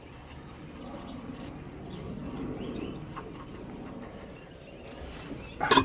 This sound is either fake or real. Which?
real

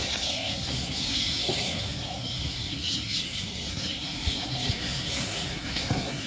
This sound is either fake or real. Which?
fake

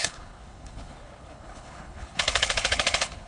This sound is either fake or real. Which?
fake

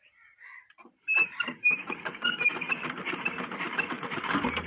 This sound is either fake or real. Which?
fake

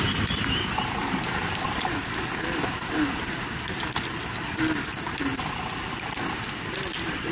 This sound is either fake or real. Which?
real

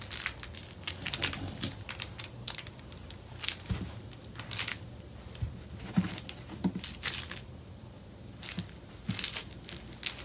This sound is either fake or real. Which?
real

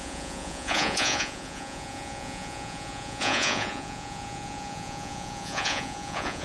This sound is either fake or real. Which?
fake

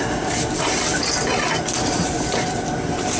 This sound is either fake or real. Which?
real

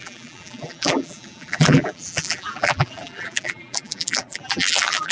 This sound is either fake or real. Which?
fake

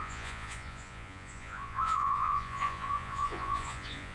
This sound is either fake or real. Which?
fake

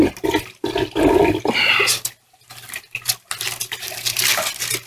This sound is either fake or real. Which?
real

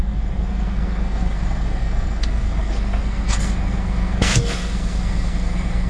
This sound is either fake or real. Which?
fake